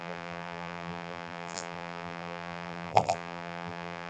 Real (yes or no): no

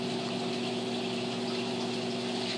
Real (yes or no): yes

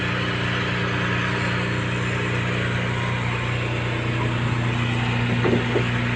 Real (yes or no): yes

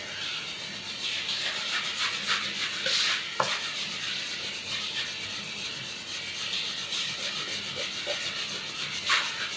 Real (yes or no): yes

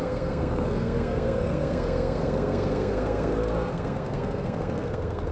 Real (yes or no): no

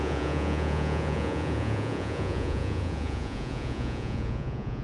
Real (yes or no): no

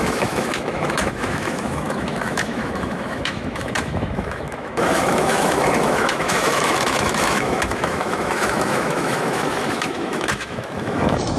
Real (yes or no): no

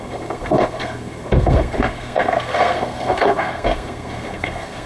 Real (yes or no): no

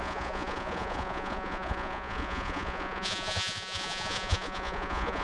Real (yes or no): no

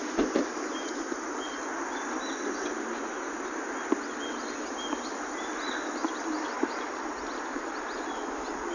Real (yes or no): yes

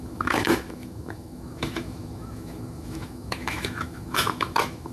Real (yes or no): no